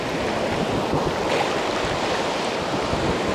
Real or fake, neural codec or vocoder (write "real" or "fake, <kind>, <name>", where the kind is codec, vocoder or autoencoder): real